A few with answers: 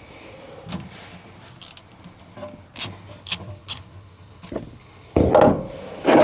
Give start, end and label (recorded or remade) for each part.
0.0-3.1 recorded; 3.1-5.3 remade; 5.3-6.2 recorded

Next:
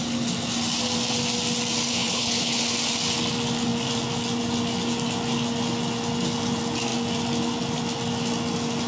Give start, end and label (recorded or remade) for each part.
0.0-1.9 recorded; 1.9-2.6 remade; 2.6-8.9 recorded